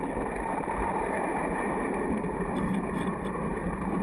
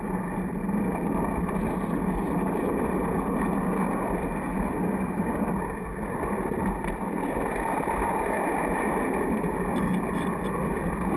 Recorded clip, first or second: second